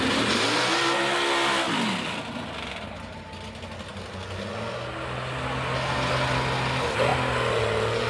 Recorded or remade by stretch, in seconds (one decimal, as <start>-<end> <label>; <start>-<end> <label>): 0.0-8.1 recorded